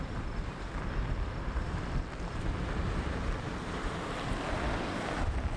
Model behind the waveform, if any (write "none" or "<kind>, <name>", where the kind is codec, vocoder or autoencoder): none